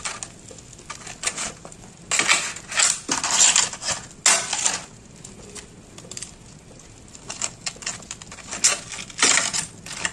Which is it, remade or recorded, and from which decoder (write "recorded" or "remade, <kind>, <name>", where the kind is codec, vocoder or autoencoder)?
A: recorded